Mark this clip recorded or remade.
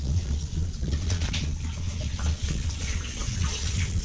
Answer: remade